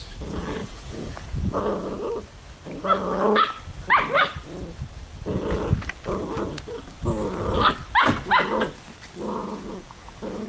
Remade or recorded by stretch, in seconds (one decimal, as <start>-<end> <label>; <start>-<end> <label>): 0.0-0.6 recorded; 0.6-1.6 remade; 1.6-9.4 recorded; 9.4-10.1 remade; 10.1-10.5 recorded